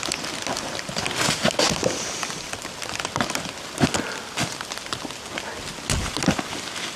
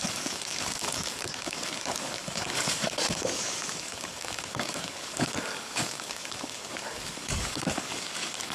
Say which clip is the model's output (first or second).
second